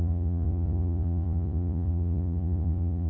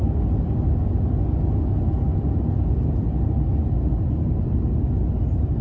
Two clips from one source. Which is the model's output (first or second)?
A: first